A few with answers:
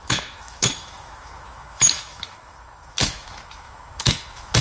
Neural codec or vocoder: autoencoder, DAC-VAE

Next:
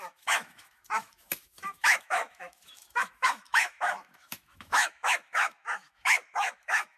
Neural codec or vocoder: autoencoder, DAC-VAE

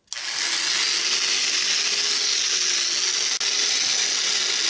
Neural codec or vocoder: none